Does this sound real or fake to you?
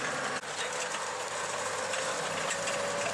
real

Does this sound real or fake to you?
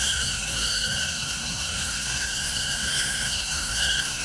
fake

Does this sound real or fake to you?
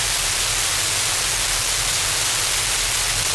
real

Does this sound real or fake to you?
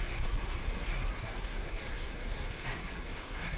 fake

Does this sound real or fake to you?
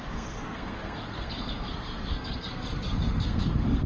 fake